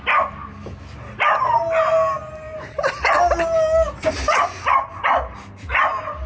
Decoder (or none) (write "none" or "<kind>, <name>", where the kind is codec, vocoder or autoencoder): none